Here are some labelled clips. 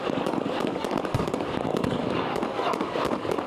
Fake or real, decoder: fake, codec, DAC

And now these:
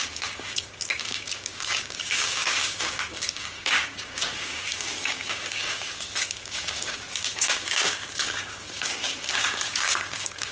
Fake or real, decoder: fake, codec, DAC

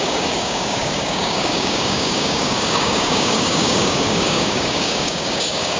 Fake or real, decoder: fake, codec, DAC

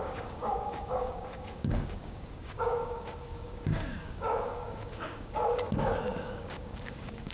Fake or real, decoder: fake, codec, DAC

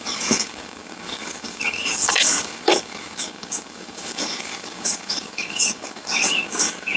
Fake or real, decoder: fake, codec, DAC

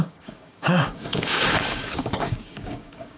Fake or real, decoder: fake, codec, DAC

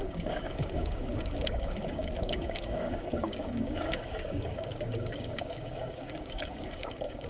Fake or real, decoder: fake, codec, DAC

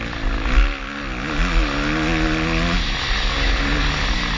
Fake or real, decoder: real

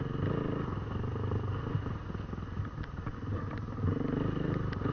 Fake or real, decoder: real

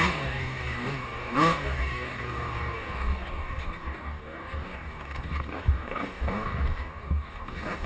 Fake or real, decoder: fake, codec, DAC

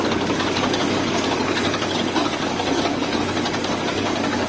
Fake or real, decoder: fake, codec, DAC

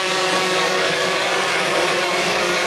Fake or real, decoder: fake, codec, DAC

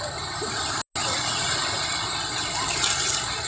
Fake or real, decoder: real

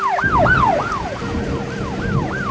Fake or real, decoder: real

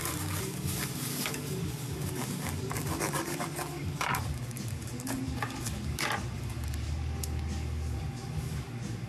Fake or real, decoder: fake, codec, DAC